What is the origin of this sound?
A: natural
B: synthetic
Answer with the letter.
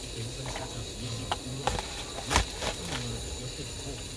A